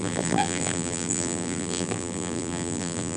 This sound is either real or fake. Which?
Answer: fake